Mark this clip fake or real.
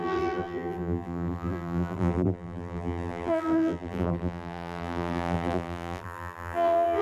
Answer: fake